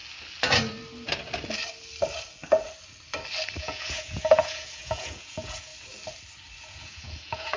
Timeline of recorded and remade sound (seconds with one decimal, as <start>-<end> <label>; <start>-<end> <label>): 0.0-3.6 recorded; 3.6-5.7 remade; 5.7-6.6 recorded; 6.6-7.6 remade